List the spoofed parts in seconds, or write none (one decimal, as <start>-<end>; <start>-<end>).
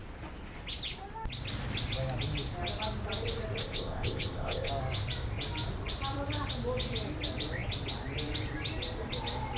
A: 3.6-4.7